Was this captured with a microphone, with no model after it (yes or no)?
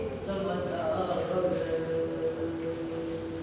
yes